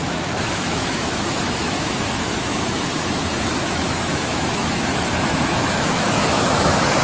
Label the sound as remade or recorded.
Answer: remade